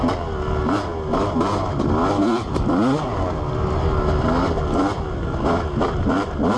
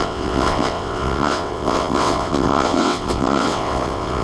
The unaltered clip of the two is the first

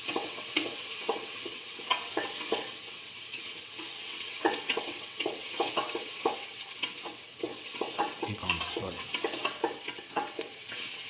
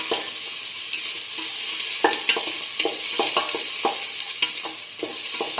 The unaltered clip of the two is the second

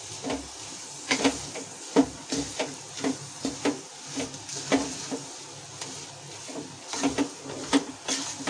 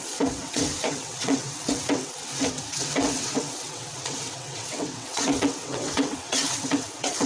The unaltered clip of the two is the first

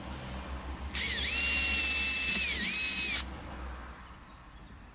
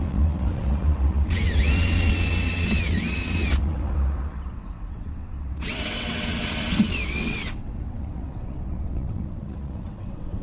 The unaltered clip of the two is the first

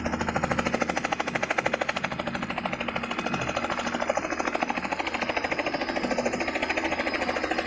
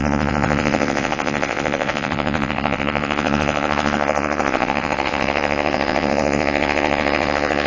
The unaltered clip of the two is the first